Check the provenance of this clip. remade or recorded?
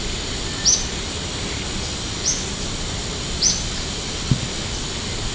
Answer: recorded